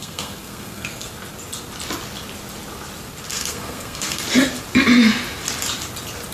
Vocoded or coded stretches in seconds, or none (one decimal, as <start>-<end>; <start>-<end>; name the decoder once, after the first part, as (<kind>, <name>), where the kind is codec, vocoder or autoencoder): 0.0-1.1 (codec, SNAC); 3.3-4.2